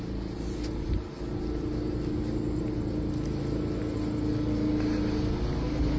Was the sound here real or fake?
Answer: real